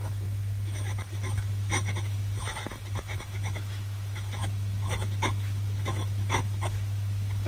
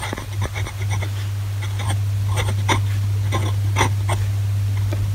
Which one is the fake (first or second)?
first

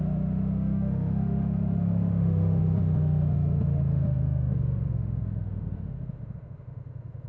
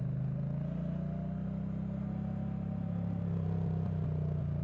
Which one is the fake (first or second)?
first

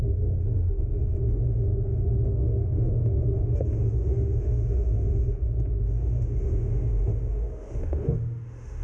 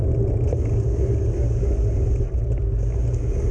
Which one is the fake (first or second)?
first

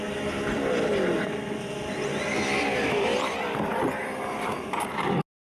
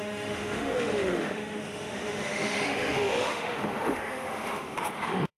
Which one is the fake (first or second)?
second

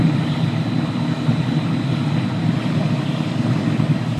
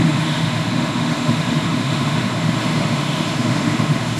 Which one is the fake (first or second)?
second